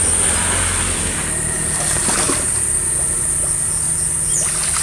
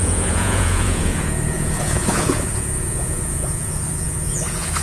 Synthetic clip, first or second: second